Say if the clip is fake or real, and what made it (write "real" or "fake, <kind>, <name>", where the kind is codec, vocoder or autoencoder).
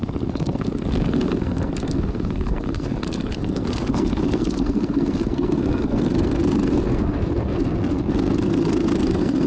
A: fake, codec, SNAC